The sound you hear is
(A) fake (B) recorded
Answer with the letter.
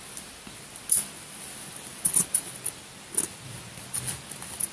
B